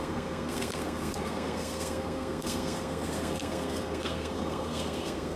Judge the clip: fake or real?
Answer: fake